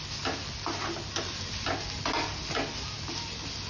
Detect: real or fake real